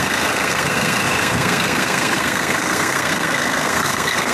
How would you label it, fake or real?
fake